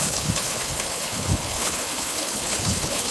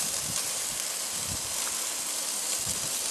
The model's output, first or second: first